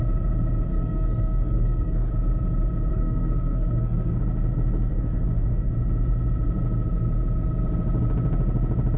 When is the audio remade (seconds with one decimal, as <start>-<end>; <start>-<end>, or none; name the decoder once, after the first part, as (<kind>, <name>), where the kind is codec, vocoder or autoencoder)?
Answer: 0.7-2.1 (codec, SNAC); 2.9-4.2; 4.9-5.7